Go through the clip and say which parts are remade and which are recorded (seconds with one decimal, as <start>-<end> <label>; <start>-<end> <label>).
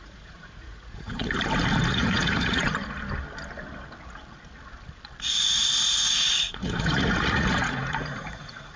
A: 0.0-1.2 remade; 1.2-1.8 recorded; 1.8-2.8 remade; 2.8-6.3 recorded; 6.3-8.8 remade